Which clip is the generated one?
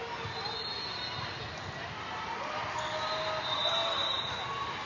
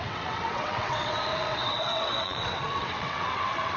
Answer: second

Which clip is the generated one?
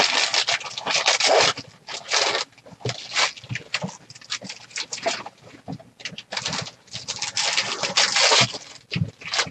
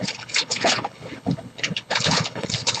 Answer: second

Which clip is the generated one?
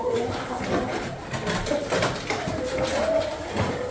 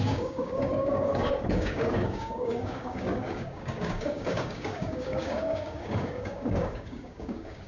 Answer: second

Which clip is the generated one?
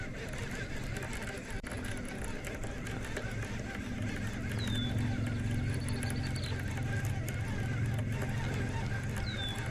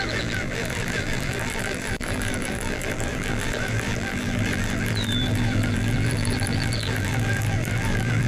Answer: second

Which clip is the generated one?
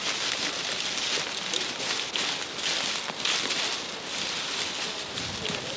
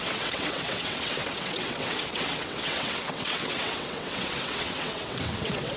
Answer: second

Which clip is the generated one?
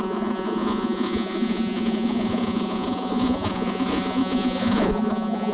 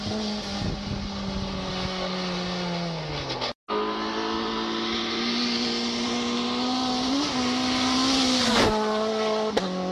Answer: first